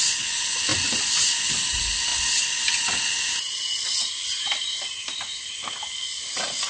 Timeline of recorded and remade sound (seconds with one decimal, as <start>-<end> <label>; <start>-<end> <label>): 0.0-6.7 recorded